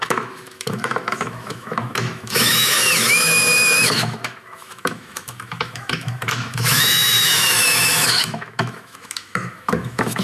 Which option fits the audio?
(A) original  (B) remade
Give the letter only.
B